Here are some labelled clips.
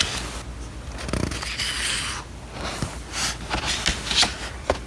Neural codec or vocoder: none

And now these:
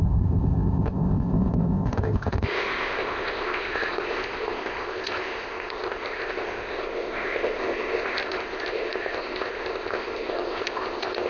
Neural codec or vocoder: codec, ZipCodec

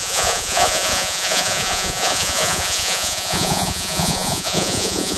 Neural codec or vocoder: vocoder, Vocos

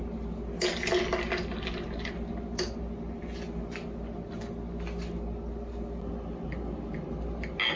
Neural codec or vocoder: none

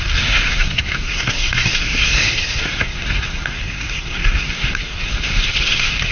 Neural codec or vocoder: codec, SNAC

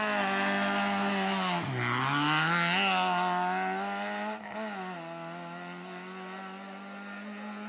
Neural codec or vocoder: none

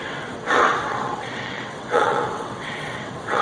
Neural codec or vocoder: vocoder, WaveNeXt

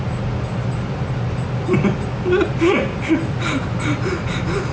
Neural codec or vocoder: none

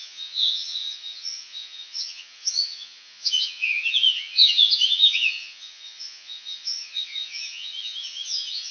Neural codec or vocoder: vocoder, Vocos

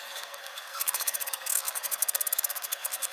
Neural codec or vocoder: codec, SNAC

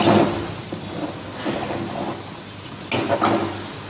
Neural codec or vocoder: none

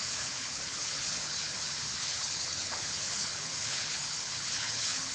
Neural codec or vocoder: codec, HILCodec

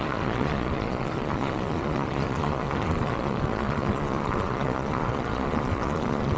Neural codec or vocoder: vocoder, Vocos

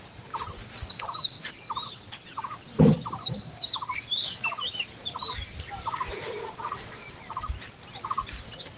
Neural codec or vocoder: none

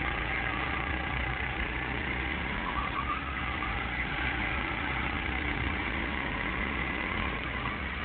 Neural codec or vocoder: vocoder, Vocos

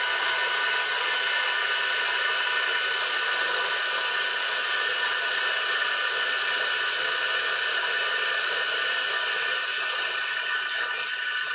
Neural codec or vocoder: none